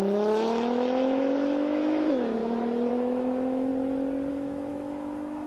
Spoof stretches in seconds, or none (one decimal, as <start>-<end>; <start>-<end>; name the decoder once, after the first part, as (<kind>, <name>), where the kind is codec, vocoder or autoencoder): 0.0-2.4 (autoencoder, DAC-VAE); 2.9-3.7; 4.3-5.5